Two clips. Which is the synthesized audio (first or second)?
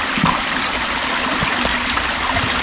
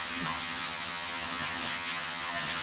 second